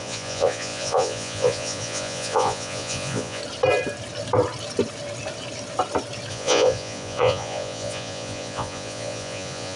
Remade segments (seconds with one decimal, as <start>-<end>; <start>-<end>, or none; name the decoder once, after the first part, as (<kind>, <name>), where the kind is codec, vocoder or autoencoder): 0.0-3.4 (vocoder, Vocos); 6.3-9.8